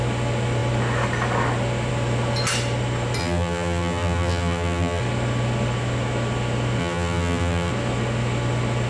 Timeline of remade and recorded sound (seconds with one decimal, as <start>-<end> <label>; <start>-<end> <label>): 0.0-3.2 recorded; 3.2-5.0 remade; 5.0-6.8 recorded; 6.8-7.7 remade; 7.7-8.9 recorded